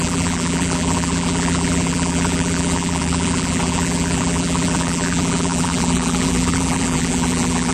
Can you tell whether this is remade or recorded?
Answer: remade